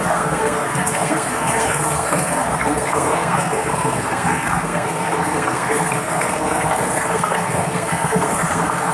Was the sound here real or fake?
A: fake